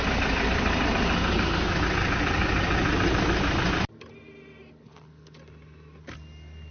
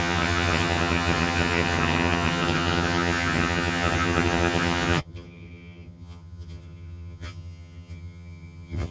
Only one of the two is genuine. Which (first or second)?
first